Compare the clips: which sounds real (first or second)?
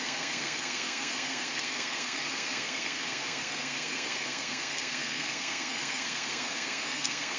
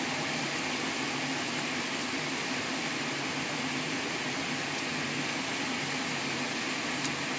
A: second